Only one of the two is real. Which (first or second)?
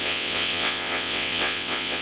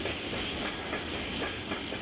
second